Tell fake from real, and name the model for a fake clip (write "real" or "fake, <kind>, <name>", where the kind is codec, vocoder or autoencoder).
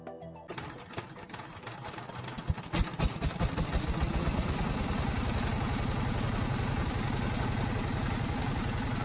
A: real